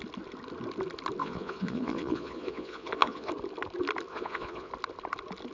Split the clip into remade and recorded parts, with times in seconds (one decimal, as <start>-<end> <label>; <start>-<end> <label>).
0.0-1.2 recorded; 1.2-3.3 remade; 3.3-4.1 recorded; 4.1-4.7 remade; 4.7-5.5 recorded